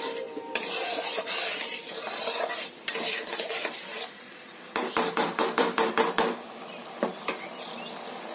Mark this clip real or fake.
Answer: fake